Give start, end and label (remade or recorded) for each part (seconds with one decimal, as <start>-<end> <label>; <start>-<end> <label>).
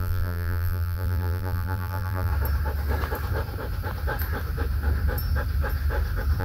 0.0-2.3 remade; 2.3-6.4 recorded